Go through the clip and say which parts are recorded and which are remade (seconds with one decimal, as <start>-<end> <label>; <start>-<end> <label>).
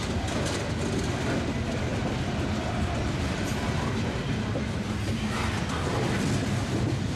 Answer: 0.0-7.2 recorded